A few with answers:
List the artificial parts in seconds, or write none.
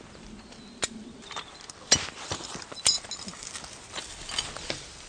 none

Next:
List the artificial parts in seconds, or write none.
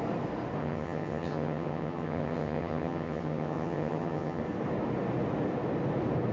0.6-4.4 (vocoder, HiFi-GAN)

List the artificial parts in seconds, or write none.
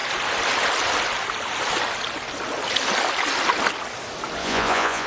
4.4-5.1 (vocoder, Vocos)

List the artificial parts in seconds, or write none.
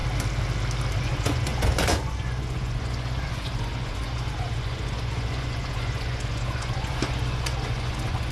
1.0-8.3 (vocoder, Vocos)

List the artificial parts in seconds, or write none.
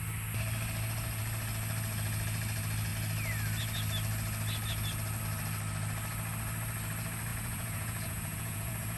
7.3-9.0 (vocoder, Vocos)